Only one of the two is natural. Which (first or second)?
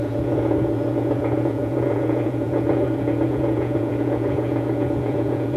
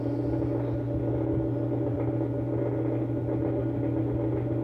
second